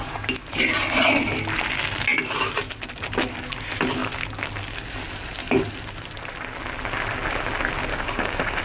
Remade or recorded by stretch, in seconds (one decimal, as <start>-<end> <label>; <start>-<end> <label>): 0.0-7.9 recorded; 7.9-8.6 remade